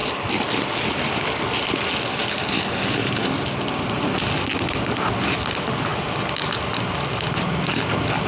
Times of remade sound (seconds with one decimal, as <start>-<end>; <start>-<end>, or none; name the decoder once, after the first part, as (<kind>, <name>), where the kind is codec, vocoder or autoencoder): 0.0-1.9 (vocoder, BigVGAN v2); 3.0-3.9